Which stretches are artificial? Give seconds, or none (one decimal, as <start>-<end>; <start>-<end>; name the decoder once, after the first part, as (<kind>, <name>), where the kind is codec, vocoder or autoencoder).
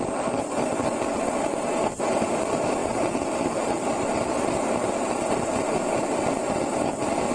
none